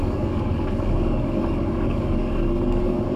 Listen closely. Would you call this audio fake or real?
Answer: fake